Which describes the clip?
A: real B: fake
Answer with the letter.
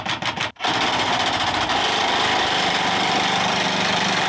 B